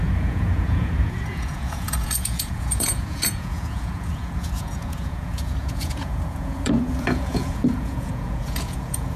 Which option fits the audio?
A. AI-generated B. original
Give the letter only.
A